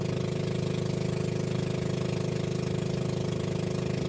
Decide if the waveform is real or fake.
real